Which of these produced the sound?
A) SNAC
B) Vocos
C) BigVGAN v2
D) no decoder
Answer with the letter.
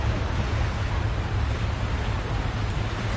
D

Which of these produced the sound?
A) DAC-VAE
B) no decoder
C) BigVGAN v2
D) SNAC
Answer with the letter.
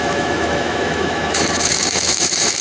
A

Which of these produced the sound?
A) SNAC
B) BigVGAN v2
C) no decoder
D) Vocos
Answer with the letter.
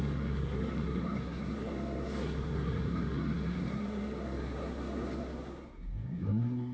A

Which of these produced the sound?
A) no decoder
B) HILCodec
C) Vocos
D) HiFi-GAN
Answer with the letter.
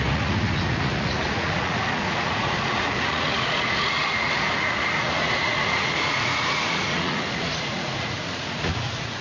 C